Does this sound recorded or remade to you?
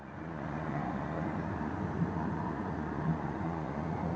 remade